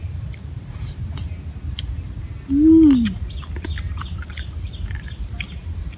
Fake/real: real